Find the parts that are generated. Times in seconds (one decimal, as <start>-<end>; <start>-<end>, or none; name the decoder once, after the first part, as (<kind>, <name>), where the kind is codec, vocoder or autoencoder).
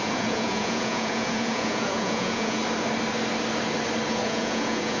0.0-2.6 (vocoder, Vocos); 4.1-5.0